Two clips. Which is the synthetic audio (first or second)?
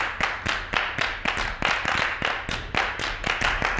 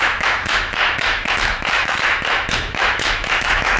second